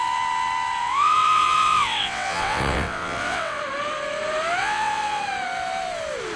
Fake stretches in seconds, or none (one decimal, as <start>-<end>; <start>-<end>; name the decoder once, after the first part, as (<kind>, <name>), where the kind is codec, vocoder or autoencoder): 0.8-3.6 (vocoder, WaveNeXt); 4.6-5.2